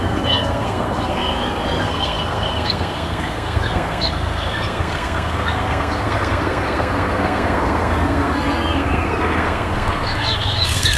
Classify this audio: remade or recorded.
remade